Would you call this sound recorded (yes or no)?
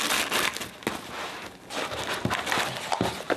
yes